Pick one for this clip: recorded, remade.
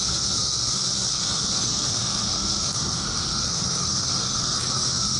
remade